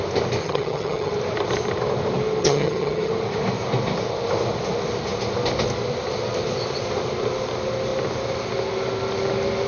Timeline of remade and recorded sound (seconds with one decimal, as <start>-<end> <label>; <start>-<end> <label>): 0.0-0.4 recorded; 0.4-1.1 remade; 1.1-2.4 recorded; 2.4-3.1 remade; 3.1-9.7 recorded